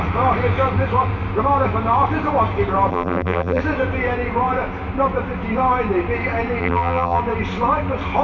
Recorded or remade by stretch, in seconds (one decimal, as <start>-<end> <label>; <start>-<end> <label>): 0.0-2.9 recorded; 2.9-3.6 remade; 3.6-6.6 recorded; 6.6-7.2 remade; 7.2-8.2 recorded